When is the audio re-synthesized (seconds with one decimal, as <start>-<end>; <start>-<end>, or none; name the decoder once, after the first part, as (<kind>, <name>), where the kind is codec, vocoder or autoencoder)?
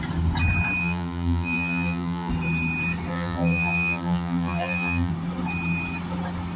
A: 0.8-2.3 (vocoder, BigVGAN v2); 3.1-5.1